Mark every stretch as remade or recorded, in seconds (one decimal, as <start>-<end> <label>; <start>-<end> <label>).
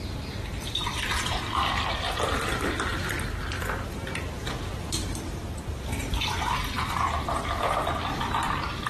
0.0-8.9 remade